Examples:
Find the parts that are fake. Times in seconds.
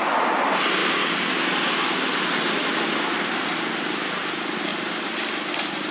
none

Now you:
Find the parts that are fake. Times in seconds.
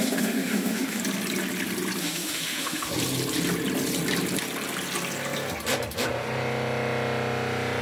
0.0-1.0 (autoencoder, DAC-VAE); 2.0-2.9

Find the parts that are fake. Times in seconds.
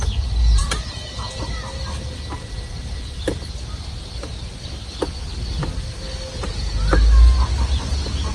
none